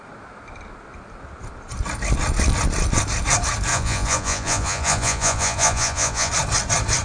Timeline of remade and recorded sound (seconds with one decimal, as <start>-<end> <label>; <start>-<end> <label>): 0.0-3.7 recorded; 3.7-6.3 remade; 6.3-7.0 recorded